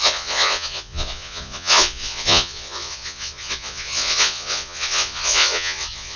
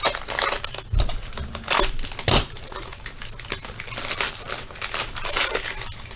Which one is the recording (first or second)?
second